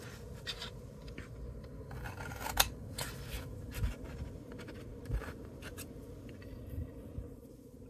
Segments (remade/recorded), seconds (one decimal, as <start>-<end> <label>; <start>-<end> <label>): 0.0-7.9 remade